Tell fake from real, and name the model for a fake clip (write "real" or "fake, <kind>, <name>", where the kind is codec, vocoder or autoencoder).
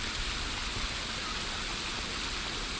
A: real